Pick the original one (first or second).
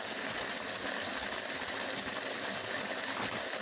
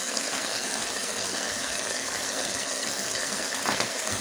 first